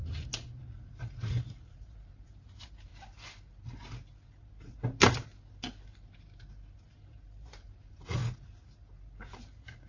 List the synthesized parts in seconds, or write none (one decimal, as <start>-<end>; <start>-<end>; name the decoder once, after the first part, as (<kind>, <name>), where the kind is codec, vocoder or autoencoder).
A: 0.0-2.9 (vocoder, BigVGAN v2); 6.8-8.2